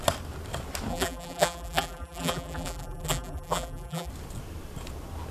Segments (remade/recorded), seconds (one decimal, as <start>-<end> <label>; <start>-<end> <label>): 0.0-0.9 recorded; 0.9-4.1 remade; 4.1-5.3 recorded